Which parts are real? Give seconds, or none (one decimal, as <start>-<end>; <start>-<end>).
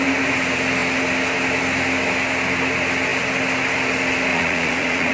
0.0-4.3